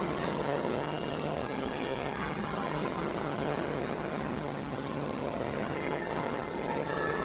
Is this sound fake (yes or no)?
yes